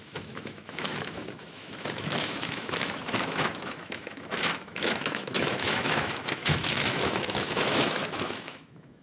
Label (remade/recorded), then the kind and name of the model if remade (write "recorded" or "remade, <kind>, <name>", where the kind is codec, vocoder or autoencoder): remade, autoencoder, DAC-VAE